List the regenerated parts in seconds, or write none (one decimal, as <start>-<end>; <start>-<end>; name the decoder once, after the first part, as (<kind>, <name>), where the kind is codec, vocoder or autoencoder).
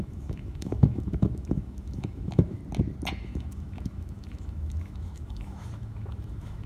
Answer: 0.0-2.6 (autoencoder, DAC-VAE); 3.2-6.7